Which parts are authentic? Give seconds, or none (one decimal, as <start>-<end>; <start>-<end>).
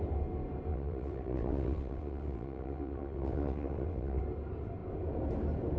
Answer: 0.0-0.7; 4.2-5.8